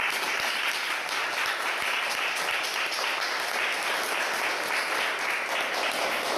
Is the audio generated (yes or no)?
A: no